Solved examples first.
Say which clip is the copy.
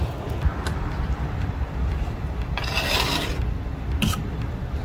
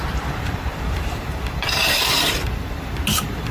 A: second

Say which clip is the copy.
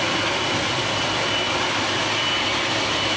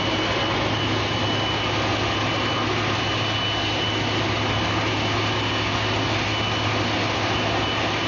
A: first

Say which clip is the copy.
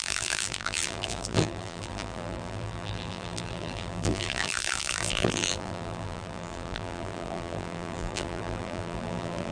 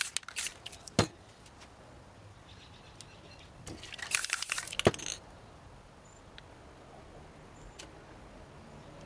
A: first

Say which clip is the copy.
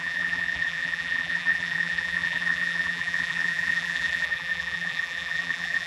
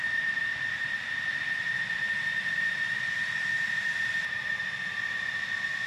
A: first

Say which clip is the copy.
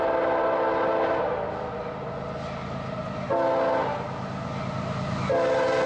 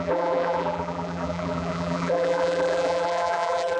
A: second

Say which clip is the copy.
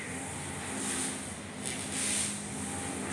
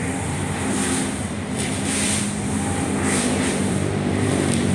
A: second